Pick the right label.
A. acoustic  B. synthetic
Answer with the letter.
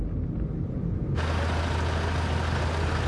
A